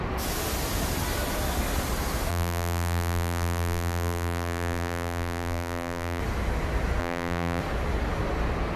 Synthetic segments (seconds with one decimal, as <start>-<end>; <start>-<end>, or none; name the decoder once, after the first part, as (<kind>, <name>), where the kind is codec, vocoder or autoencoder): 2.3-6.2 (vocoder, BigVGAN v2); 7.0-7.6